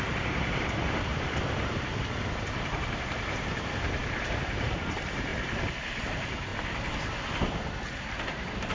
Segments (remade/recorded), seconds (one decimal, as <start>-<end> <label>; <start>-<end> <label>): 0.0-1.1 remade; 1.1-2.3 recorded; 2.3-5.3 remade; 5.3-6.0 recorded; 6.0-6.5 remade; 6.5-8.0 recorded; 8.0-8.7 remade